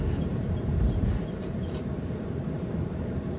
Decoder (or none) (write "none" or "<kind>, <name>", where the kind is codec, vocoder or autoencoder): vocoder, BigVGAN v2